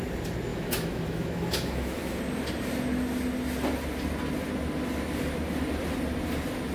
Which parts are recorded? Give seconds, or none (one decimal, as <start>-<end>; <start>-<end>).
0.0-0.5; 2.1-6.7